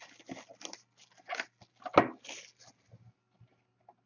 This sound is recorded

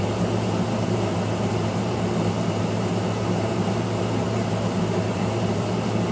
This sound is remade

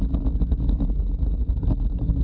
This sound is recorded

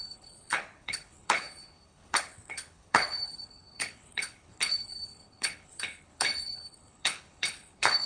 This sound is remade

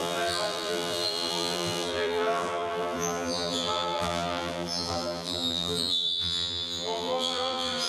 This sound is remade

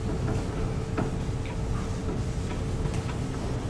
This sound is recorded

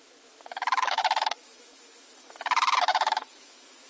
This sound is remade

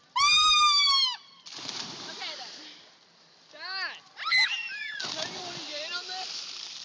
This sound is recorded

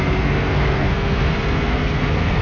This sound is remade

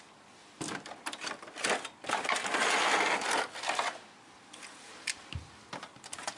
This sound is recorded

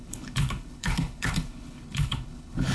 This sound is remade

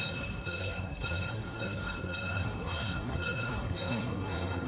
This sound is remade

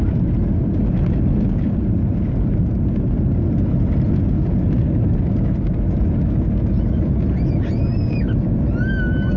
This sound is recorded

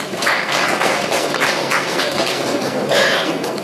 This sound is remade